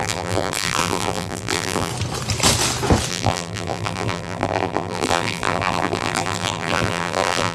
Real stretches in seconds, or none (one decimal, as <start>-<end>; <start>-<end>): 1.9-3.1